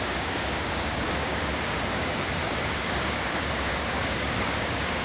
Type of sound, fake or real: fake